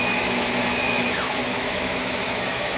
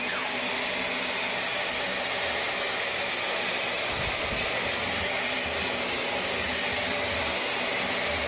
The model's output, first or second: first